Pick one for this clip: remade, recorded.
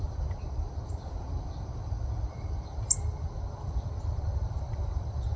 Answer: remade